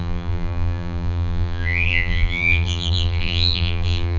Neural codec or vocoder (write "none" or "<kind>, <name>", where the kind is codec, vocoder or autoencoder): vocoder, BigVGAN v2